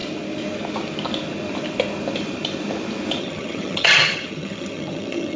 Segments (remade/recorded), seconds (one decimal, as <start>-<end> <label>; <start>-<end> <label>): 0.0-3.2 recorded; 3.2-5.4 remade